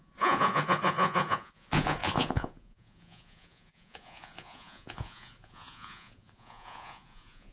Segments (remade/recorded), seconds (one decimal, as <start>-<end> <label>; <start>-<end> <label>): 0.0-7.5 remade